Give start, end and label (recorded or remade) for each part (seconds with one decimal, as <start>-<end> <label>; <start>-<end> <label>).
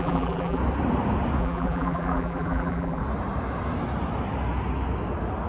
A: 0.0-0.6 remade; 0.6-1.4 recorded; 1.4-3.0 remade; 3.0-5.5 recorded